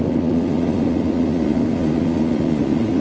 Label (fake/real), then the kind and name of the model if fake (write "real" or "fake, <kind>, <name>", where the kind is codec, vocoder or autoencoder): fake, vocoder, Vocos